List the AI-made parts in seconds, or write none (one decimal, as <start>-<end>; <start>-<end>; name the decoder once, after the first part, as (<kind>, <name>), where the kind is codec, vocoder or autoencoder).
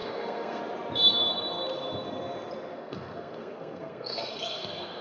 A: 0.0-0.6 (codec, SNAC); 2.7-5.0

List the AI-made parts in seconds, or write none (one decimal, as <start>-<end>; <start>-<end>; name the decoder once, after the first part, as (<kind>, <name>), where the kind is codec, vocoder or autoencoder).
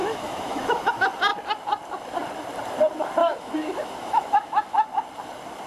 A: 0.0-0.9 (autoencoder, DAC-VAE); 3.2-4.9